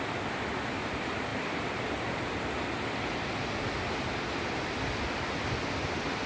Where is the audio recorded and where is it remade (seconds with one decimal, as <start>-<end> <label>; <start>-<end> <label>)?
0.0-6.3 recorded